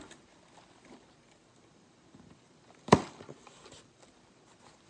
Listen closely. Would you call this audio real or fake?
fake